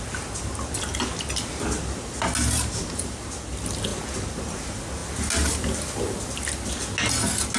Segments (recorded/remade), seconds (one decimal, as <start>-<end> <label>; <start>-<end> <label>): 0.0-7.6 recorded